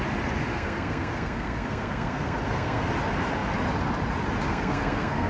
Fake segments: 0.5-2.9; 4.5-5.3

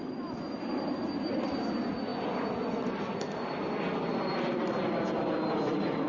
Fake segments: none

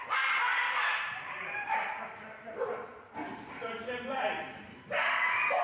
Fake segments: 0.5-2.0

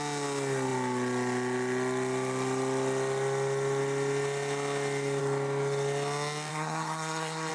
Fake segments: 6.5-7.5

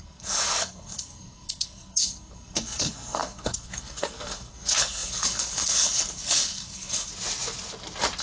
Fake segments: 0.0-7.1

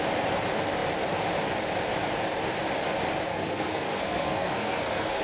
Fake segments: 3.3-5.2

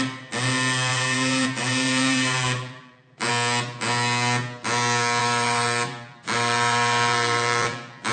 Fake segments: 0.9-3.3; 5.2-8.1

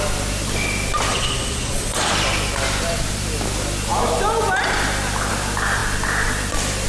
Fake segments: 1.1-2.1